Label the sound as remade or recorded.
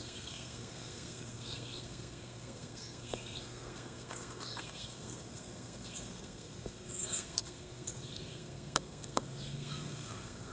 remade